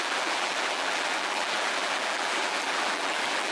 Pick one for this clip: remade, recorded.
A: remade